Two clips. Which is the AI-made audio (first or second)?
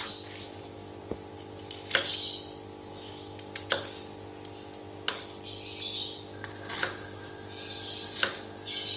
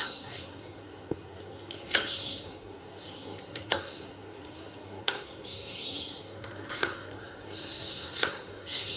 second